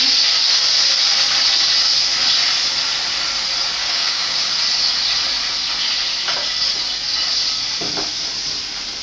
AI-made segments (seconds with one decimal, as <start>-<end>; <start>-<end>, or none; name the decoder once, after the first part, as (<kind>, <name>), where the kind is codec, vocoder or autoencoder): 3.8-4.5 (codec, DAC)